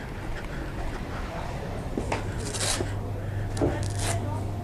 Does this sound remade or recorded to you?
recorded